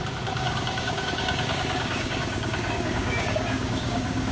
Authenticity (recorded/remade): remade